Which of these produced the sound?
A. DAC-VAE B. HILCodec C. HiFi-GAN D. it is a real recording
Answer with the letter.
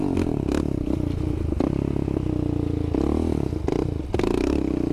D